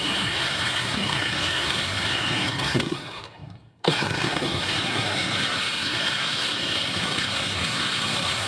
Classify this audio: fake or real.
fake